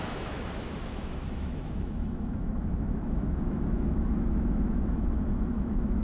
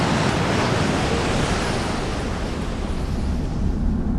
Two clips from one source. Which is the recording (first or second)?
second